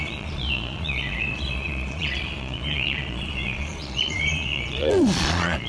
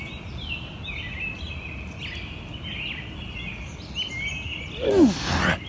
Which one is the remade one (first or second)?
first